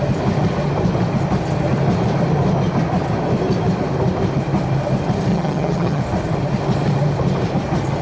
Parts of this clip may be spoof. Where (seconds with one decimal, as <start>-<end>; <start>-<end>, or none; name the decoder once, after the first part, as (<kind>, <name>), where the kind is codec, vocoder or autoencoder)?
5.3-6.0 (vocoder, HiFi-GAN)